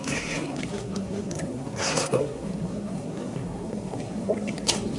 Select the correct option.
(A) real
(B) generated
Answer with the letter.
B